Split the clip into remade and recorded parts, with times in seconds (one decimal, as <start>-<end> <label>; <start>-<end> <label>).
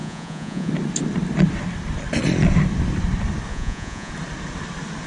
0.0-0.7 remade; 0.7-3.5 recorded; 3.5-4.1 remade; 4.1-5.1 recorded